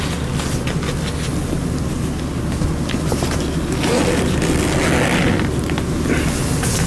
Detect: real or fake real